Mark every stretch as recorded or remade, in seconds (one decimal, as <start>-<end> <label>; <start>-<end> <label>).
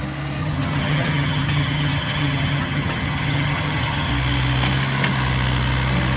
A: 0.0-0.4 recorded; 0.4-4.1 remade; 4.1-6.2 recorded